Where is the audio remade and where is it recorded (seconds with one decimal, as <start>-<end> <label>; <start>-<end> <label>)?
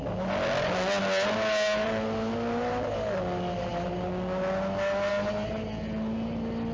0.0-6.7 recorded